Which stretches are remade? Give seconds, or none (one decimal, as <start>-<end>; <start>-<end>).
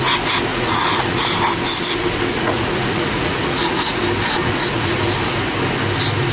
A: 0.5-1.3; 2.3-4.0; 4.4-5.1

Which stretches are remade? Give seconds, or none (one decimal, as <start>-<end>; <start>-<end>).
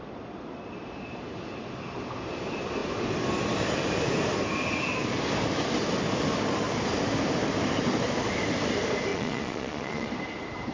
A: 9.1-10.1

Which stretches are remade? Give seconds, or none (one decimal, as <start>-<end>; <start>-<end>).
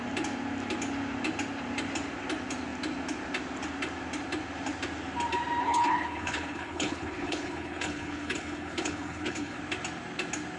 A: 5.6-9.6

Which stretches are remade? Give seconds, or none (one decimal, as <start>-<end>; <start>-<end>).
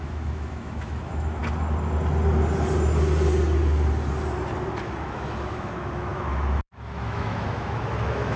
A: 0.0-1.4; 4.8-8.4